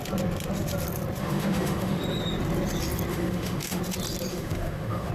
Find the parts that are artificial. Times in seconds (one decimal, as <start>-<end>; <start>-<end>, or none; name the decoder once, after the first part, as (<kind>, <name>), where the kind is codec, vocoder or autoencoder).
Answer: 1.2-2.0 (autoencoder, DAC-VAE); 3.1-3.8; 4.3-5.1